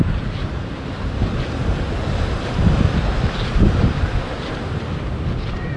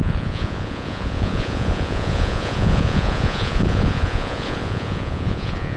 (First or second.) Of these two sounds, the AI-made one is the second